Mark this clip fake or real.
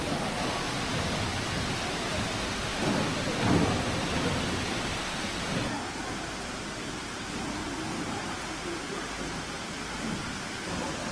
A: real